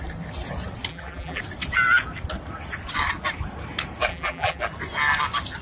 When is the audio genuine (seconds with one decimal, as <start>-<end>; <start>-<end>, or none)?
0.0-0.9; 1.4-4.1; 4.6-5.6

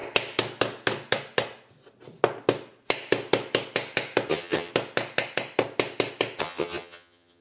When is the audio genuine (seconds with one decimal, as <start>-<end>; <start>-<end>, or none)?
0.0-4.3; 4.7-6.4

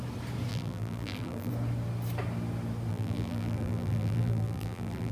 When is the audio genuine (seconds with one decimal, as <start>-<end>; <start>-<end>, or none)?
0.0-0.5; 1.5-2.9

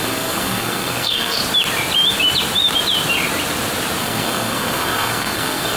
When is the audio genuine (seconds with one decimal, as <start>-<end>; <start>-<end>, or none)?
1.4-4.0

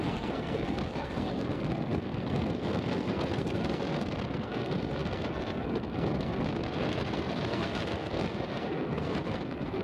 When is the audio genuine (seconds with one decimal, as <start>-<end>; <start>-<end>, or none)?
none

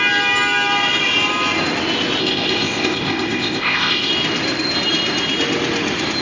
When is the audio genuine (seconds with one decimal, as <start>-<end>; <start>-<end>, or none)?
0.0-2.2; 4.1-6.2